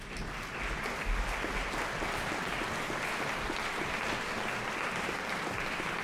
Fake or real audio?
real